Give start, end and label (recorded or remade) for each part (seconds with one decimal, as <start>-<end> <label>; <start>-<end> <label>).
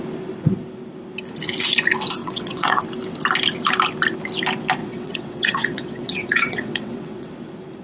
0.0-2.2 recorded; 2.2-2.8 remade; 2.8-4.8 recorded; 4.8-7.3 remade; 7.3-7.8 recorded